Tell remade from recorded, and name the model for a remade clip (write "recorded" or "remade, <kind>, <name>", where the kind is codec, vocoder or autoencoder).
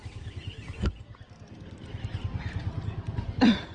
recorded